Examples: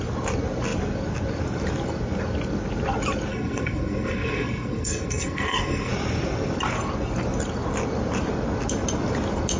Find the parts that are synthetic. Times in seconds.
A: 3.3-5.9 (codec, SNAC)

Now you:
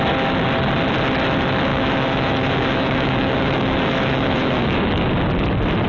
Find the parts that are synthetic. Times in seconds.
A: 1.7-5.0 (autoencoder, DAC-VAE)

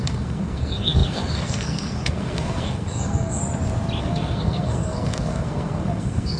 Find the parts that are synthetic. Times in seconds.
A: 0.0-3.4 (codec, SNAC); 4.0-6.4

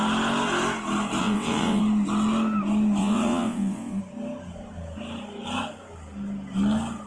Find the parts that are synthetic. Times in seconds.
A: 1.2-1.8 (vocoder, WaveNeXt); 3.0-4.0

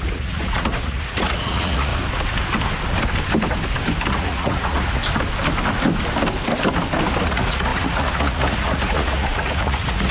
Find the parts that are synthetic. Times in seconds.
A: 0.0-1.9 (vocoder, Vocos); 4.1-5.0; 7.2-10.1

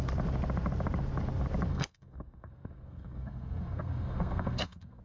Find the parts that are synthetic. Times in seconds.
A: 1.7-5.0 (codec, SNAC)

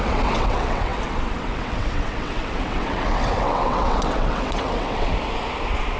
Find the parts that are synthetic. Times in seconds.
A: 0.0-5.1 (vocoder, WaveNeXt)